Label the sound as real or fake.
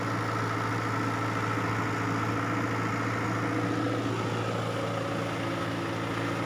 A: real